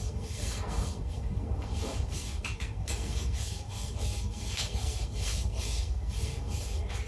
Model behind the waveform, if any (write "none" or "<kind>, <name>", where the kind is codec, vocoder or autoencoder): codec, SNAC